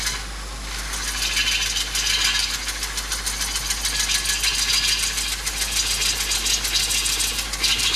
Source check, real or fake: real